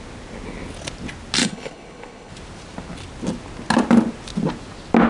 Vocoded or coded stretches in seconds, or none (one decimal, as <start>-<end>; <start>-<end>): 1.4-2.3